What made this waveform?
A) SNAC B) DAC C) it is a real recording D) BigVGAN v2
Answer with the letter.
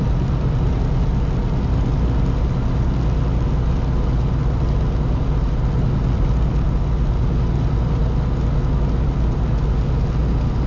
C